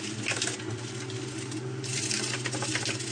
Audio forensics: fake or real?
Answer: real